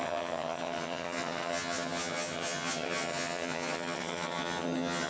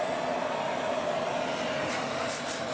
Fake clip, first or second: first